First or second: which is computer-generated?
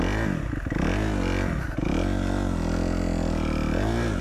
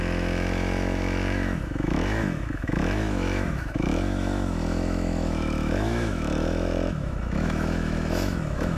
second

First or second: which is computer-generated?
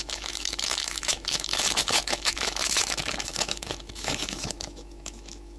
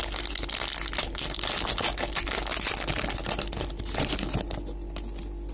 first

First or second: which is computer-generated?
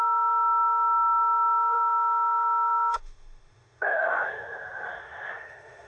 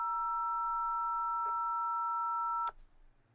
first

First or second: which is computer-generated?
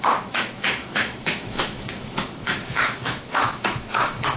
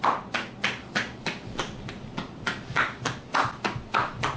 first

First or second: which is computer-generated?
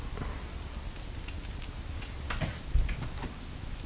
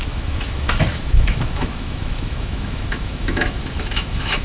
second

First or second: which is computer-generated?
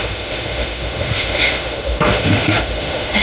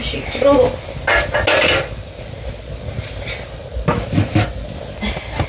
first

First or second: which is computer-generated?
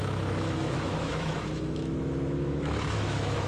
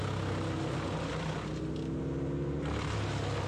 first